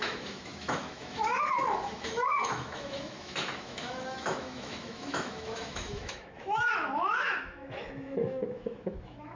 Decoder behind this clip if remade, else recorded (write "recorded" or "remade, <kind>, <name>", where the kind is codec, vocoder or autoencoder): remade, autoencoder, DAC-VAE